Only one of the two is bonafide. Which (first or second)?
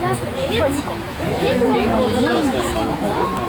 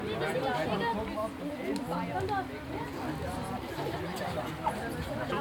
second